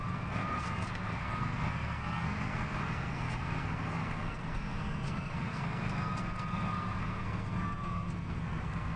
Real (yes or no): no